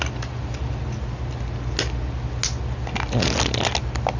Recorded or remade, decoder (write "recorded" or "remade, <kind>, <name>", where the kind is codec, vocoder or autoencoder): recorded